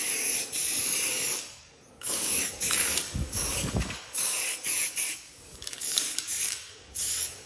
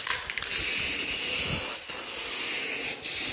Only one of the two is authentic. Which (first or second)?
second